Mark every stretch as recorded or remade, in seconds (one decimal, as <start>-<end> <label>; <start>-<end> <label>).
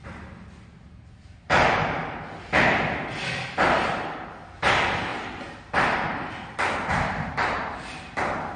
0.0-5.1 recorded; 5.1-8.2 remade; 8.2-8.6 recorded